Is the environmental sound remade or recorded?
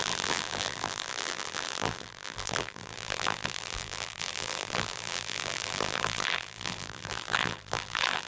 remade